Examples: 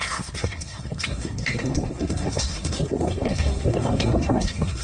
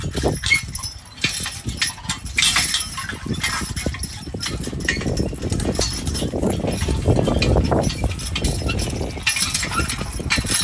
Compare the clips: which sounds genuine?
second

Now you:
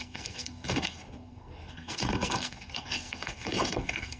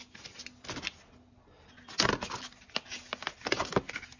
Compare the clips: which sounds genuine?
second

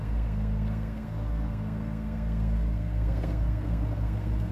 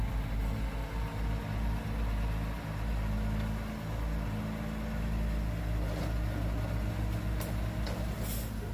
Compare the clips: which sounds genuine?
second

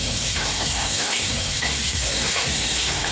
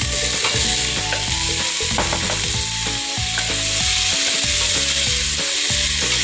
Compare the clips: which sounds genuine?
second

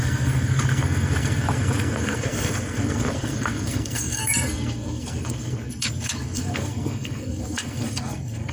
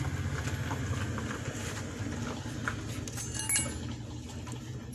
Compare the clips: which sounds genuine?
second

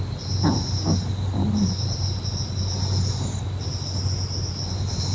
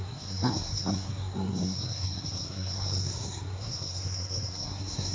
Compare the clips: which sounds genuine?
first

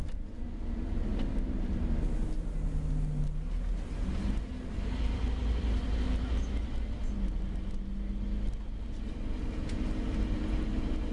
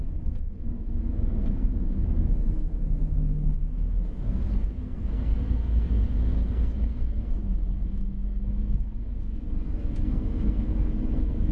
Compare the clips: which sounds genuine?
first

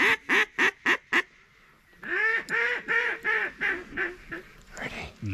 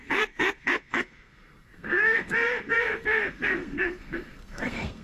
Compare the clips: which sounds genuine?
first